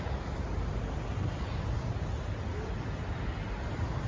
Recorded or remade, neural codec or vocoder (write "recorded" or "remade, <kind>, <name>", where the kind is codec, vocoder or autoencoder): recorded